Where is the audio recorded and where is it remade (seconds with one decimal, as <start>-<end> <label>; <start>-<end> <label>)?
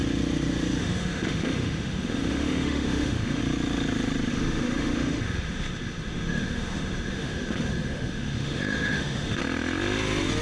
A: 0.0-0.8 recorded; 0.8-3.4 remade; 3.4-4.3 recorded; 4.3-9.4 remade; 9.4-10.4 recorded